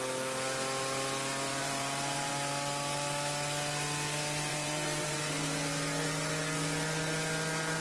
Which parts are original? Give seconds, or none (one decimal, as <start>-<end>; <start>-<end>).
0.0-1.5; 2.3-4.5; 5.3-7.8

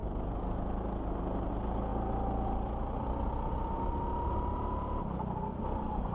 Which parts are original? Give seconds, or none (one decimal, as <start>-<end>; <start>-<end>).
0.0-6.1

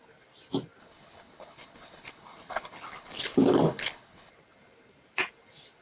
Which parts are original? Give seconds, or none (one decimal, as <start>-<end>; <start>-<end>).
0.0-0.8; 4.3-5.8

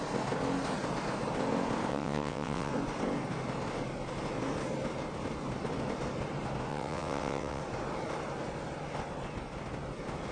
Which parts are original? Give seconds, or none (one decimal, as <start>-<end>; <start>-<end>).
0.0-1.9; 2.7-6.7; 7.6-10.3

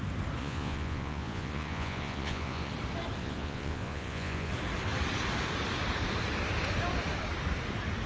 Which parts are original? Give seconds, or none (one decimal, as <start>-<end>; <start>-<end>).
0.0-0.4; 2.7-3.2; 4.5-8.1

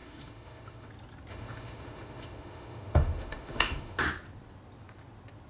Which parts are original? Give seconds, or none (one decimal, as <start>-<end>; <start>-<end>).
0.9-1.3; 4.0-5.5